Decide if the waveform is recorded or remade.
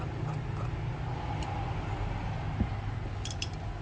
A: recorded